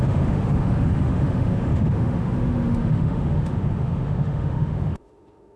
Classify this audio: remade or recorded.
remade